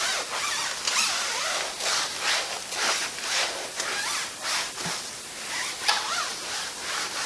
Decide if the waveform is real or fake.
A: real